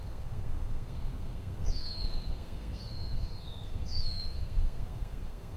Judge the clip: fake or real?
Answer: fake